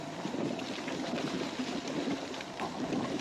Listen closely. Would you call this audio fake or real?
real